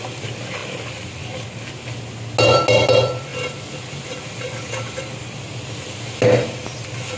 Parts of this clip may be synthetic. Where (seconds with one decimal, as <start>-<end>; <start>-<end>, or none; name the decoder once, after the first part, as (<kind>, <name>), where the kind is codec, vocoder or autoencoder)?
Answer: none